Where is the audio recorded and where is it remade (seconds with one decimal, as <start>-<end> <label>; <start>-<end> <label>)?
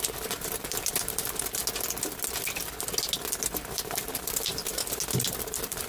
0.0-1.6 remade; 1.6-3.7 recorded; 3.7-4.8 remade; 4.8-5.4 recorded; 5.4-5.9 remade